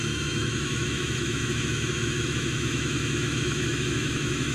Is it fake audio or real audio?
fake